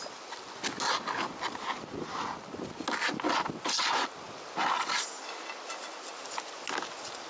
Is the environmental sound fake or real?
real